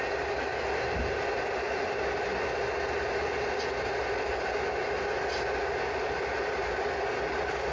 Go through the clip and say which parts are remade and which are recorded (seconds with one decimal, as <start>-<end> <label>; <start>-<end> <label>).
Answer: 0.0-7.7 recorded